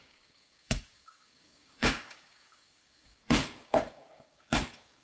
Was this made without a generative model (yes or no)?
no